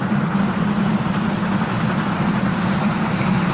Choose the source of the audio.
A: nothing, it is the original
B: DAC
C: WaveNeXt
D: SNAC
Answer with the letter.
A